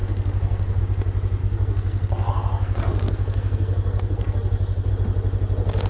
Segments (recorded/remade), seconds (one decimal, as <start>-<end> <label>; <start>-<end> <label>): 0.0-0.8 remade; 0.8-1.4 recorded; 1.4-4.9 remade; 4.9-5.9 recorded